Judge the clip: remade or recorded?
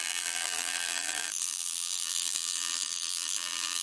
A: remade